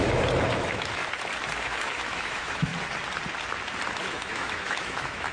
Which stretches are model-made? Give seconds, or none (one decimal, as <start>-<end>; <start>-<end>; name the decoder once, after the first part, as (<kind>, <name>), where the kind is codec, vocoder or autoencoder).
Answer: 0.0-1.0 (autoencoder, DAC-VAE); 1.6-2.7; 4.0-5.3